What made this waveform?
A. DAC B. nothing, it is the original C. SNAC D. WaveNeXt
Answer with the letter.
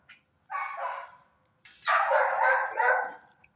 B